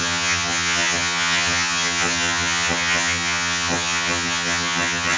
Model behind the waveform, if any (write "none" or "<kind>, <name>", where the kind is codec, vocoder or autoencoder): vocoder, HiFi-GAN